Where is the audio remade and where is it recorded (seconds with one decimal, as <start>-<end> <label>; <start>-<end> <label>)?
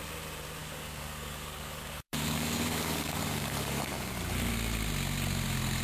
0.0-0.6 recorded; 0.6-4.1 remade; 4.1-5.8 recorded